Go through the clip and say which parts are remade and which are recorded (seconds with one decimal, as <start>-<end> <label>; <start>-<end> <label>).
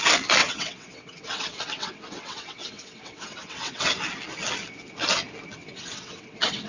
0.0-0.4 recorded; 0.4-3.8 remade; 3.8-5.6 recorded; 5.6-6.7 remade